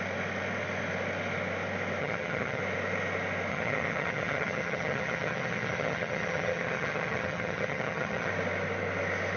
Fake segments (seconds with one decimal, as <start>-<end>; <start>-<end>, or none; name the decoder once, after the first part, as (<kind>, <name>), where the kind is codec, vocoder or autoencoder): 2.0-2.6 (vocoder, HiFi-GAN); 3.5-8.3